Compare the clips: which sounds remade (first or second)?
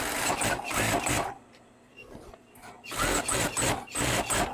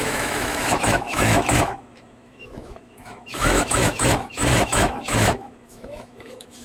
second